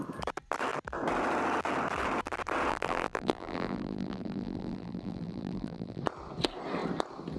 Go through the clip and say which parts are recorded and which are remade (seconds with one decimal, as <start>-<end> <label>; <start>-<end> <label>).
0.0-2.7 recorded; 2.7-6.0 remade; 6.0-7.4 recorded